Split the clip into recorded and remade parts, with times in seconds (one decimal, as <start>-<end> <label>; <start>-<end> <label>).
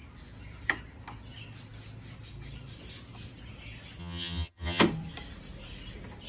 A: 0.0-4.0 recorded; 4.0-4.8 remade; 4.8-6.3 recorded